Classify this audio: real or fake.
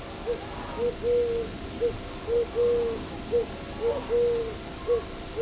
real